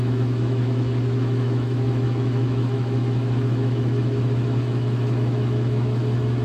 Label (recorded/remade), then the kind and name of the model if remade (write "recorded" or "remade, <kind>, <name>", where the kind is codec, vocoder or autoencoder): remade, autoencoder, DAC-VAE